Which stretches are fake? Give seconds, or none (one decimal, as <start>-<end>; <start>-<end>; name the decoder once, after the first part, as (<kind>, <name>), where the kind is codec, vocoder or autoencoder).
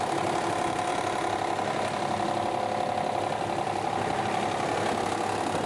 none